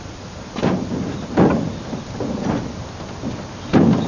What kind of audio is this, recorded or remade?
recorded